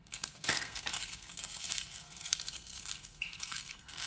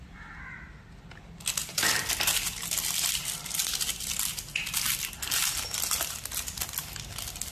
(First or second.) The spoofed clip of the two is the first